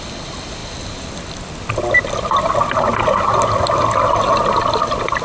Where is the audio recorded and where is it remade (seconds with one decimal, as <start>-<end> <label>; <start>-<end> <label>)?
0.0-5.2 recorded